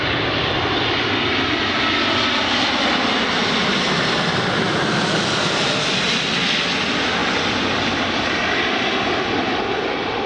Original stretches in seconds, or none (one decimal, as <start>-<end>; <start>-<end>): 0.0-10.3

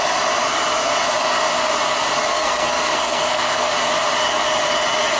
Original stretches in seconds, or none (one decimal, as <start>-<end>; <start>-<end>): 0.0-2.3; 3.7-5.2